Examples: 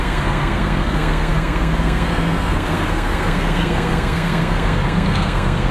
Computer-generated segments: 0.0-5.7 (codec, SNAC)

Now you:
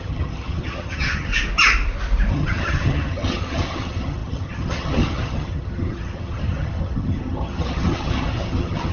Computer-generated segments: 0.0-1.3 (vocoder, HiFi-GAN); 2.3-8.9

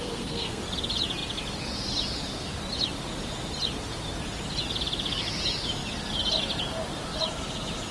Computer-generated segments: 0.0-0.6 (codec, SNAC)

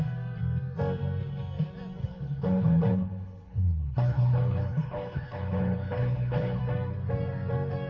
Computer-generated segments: 2.0-6.6 (codec, HILCodec)

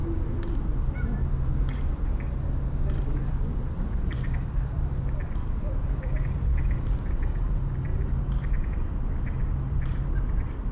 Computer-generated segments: 1.9-7.9 (vocoder, BigVGAN v2); 9.6-10.7

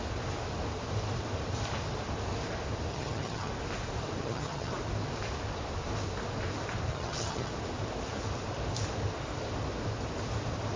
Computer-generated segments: 2.9-3.5 (vocoder, HiFi-GAN); 4.2-4.7; 6.9-7.5